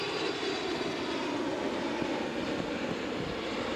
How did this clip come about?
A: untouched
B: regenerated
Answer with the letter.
A